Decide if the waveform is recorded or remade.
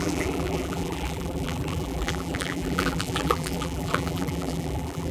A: remade